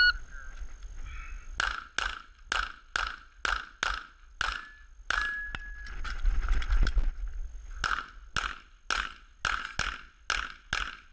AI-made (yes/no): no